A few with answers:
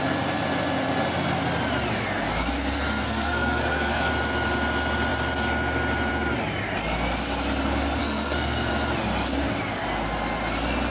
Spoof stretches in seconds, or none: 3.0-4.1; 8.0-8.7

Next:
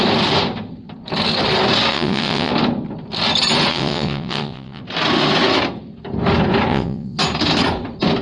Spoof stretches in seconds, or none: 1.9-2.5; 3.7-4.8; 6.7-7.2

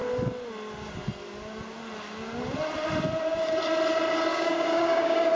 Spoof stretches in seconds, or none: 4.3-5.3

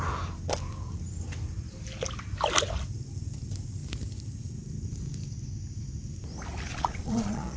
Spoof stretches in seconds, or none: 6.7-7.6

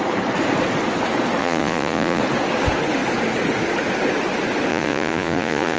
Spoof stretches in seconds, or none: 1.4-2.2; 4.7-5.8

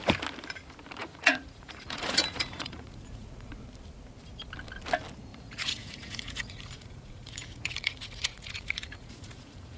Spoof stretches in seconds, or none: 1.0-3.5; 5.3-9.8

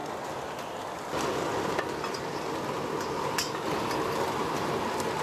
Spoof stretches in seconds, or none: none